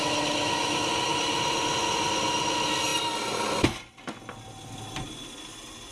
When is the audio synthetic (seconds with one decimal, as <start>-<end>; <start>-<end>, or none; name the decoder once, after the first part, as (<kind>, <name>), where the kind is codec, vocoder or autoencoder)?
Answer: none